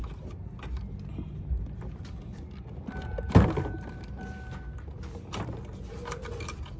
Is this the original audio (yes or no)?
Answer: yes